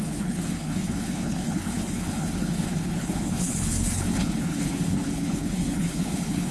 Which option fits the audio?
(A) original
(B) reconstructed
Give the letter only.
B